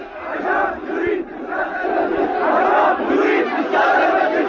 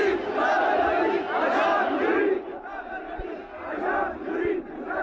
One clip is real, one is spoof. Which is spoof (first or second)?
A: first